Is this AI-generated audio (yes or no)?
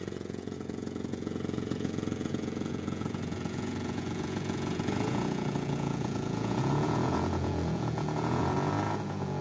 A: yes